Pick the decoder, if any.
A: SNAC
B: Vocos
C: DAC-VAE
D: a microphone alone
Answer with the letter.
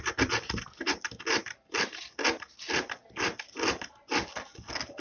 D